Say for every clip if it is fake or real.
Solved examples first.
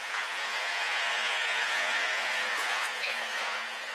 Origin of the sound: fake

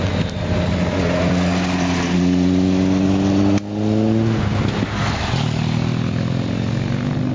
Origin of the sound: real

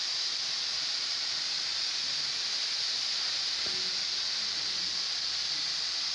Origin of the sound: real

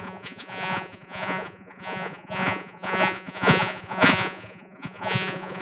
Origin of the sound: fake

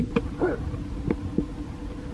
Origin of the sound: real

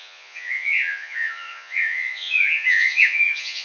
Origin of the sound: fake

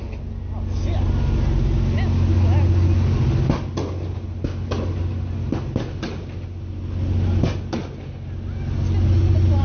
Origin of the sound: real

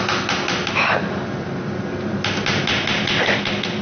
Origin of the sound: real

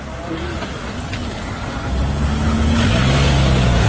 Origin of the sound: real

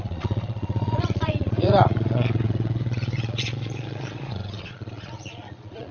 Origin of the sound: fake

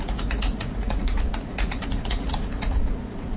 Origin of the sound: fake